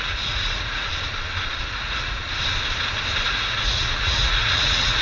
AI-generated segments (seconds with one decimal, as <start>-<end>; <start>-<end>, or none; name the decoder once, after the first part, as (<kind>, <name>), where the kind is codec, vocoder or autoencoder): 0.0-0.9 (vocoder, Vocos); 1.6-2.2; 3.3-5.0